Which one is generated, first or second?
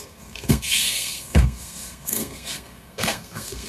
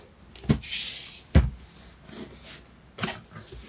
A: first